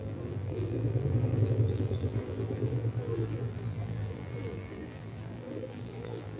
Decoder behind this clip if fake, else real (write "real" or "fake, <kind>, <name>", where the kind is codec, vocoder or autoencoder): fake, vocoder, BigVGAN v2